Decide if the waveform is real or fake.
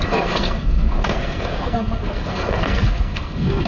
fake